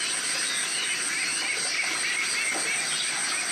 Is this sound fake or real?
real